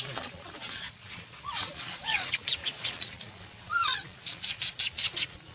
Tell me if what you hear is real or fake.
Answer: fake